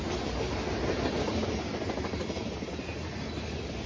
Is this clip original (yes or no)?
yes